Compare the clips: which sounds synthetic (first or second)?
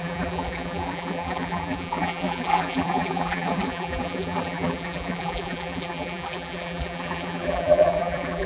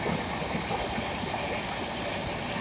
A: first